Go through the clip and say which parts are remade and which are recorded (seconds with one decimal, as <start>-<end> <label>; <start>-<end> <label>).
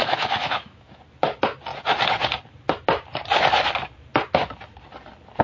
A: 0.0-1.0 remade; 1.0-5.4 recorded